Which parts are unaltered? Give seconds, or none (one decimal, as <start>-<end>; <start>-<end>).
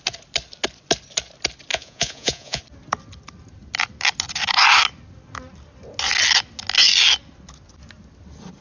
0.0-1.7; 2.6-8.6